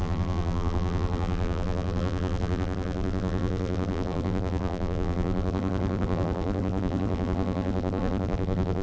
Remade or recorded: remade